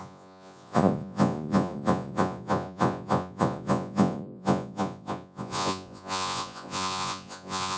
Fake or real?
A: fake